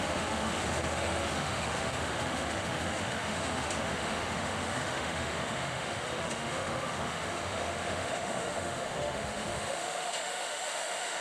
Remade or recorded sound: remade